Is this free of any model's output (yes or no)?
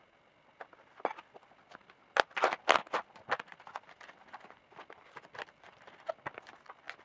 yes